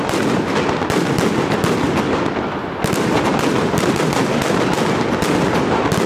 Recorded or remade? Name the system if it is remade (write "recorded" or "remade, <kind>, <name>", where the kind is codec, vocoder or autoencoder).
recorded